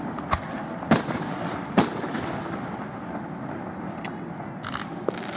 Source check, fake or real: real